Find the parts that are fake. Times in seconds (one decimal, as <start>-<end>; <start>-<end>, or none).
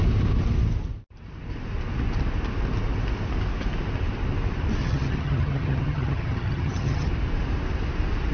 4.8-7.1